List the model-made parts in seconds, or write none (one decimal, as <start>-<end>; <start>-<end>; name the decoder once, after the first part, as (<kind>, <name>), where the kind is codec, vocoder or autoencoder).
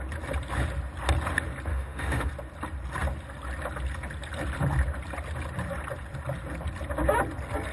1.7-2.3 (autoencoder, DAC-VAE)